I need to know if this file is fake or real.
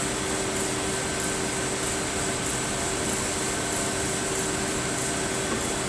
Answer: real